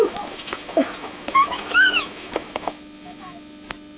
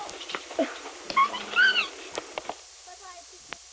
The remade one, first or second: first